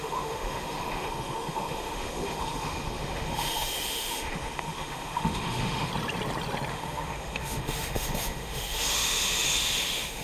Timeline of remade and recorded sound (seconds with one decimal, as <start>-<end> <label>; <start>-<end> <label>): 0.0-5.9 remade; 5.9-6.7 recorded; 6.7-10.2 remade